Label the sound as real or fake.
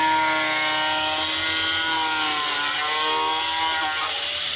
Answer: real